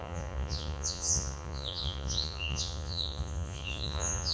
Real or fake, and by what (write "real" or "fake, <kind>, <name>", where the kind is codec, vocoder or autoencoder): fake, vocoder, Vocos